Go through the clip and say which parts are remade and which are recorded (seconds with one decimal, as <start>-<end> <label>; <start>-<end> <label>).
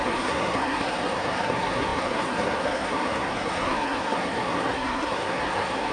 0.0-5.9 remade